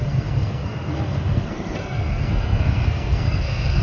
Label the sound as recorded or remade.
remade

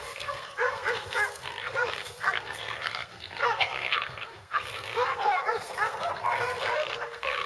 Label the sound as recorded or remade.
remade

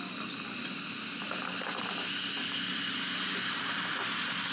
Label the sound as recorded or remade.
recorded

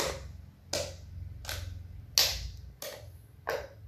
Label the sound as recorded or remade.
recorded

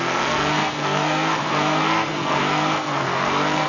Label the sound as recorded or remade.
remade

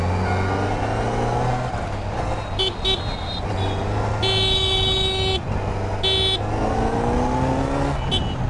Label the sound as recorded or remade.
recorded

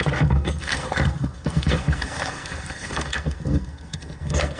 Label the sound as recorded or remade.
remade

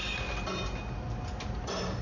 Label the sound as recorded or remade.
recorded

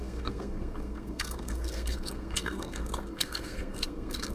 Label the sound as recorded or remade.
remade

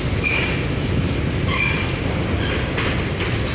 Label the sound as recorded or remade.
recorded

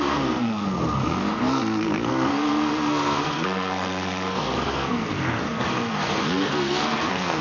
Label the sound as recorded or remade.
remade